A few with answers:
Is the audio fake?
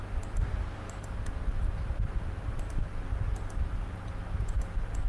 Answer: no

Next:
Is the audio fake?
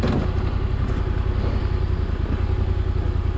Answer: no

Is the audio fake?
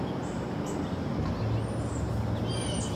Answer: no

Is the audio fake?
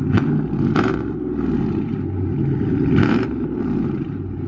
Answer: no